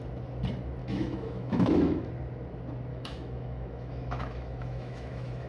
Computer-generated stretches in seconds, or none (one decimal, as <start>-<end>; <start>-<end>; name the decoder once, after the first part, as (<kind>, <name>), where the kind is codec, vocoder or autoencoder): 0.8-2.1 (autoencoder, DAC-VAE); 2.9-5.5